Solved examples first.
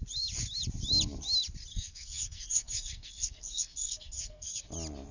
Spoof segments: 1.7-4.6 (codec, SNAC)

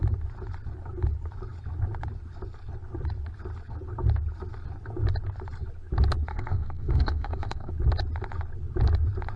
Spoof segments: 6.3-7.7 (codec, SNAC)

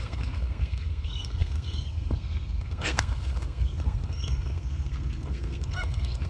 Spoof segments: 0.0-6.3 (codec, SNAC)